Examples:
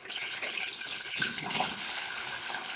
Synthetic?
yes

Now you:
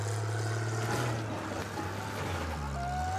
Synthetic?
no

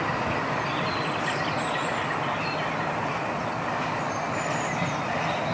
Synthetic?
no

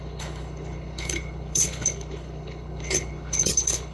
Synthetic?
yes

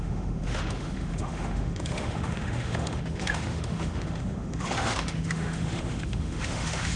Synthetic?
yes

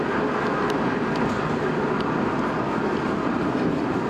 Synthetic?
no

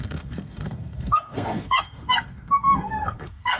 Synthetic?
yes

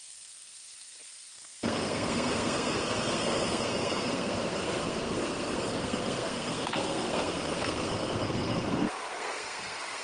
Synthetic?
yes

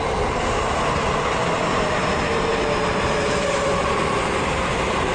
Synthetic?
no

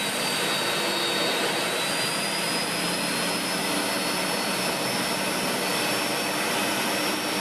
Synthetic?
no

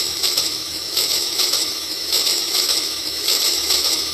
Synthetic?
yes